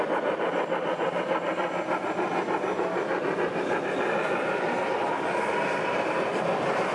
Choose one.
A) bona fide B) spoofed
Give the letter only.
A